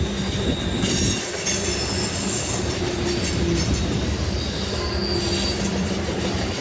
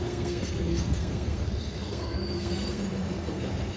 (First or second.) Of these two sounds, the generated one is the second